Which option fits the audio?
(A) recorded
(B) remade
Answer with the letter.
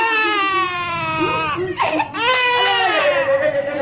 A